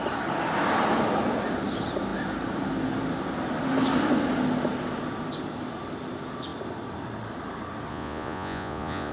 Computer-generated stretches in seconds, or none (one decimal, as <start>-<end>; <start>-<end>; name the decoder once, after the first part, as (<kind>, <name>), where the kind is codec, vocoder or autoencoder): 7.9-9.1 (vocoder, Vocos)